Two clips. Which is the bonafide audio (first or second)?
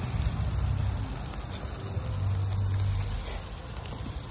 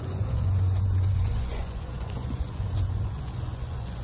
first